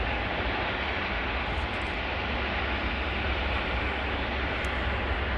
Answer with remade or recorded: recorded